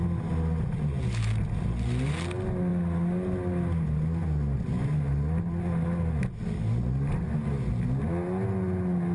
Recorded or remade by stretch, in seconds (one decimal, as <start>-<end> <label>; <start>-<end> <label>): 0.0-9.1 recorded